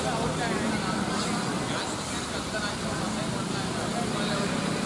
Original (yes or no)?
yes